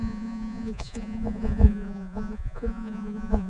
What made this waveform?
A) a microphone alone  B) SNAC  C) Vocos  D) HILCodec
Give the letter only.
C